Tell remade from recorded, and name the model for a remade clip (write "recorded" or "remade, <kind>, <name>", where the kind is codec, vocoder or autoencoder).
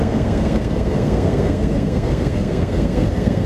remade, codec, SNAC